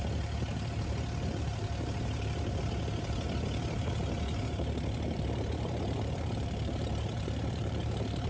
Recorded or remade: remade